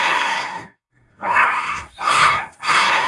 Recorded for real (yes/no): no